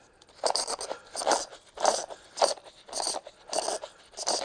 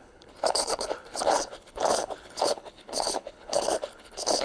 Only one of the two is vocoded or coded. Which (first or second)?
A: second